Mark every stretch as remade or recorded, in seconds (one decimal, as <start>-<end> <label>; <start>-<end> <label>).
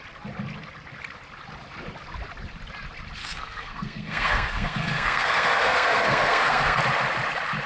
0.0-3.2 recorded; 3.2-6.8 remade; 6.8-7.7 recorded